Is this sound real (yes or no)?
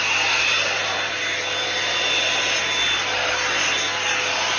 yes